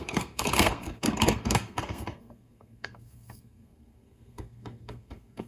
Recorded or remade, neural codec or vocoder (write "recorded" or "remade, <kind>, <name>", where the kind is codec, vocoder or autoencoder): remade, codec, SNAC